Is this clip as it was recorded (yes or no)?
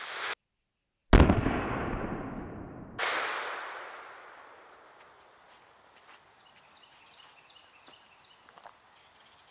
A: yes